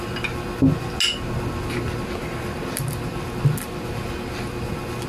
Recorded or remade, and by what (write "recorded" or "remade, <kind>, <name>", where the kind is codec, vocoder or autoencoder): recorded